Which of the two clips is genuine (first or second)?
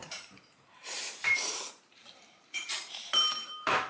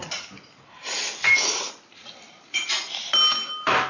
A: second